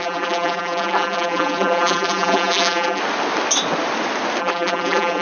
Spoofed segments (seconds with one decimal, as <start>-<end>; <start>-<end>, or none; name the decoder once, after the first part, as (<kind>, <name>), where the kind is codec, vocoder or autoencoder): 0.0-3.0 (vocoder, BigVGAN v2); 4.4-5.2